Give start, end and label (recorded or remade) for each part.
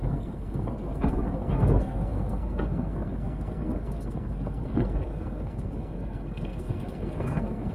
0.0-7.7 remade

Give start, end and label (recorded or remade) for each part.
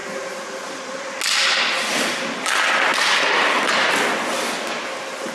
0.0-5.3 recorded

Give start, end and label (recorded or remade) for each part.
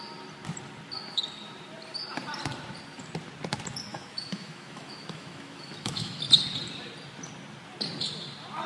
0.0-3.9 recorded; 3.9-6.2 remade; 6.2-8.7 recorded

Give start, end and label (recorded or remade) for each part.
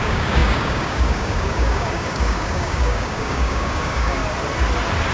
0.0-4.2 remade; 4.2-5.1 recorded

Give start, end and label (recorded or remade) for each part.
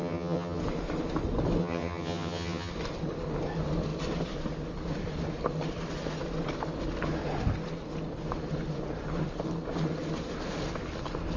0.0-0.6 remade; 0.6-1.6 recorded; 1.6-2.7 remade; 2.7-11.4 recorded